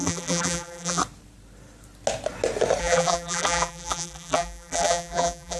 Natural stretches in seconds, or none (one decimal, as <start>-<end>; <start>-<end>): 1.0-2.8